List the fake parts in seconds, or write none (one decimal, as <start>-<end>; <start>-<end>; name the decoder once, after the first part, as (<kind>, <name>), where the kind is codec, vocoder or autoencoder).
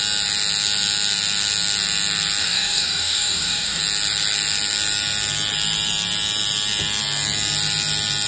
2.4-3.8 (codec, DAC)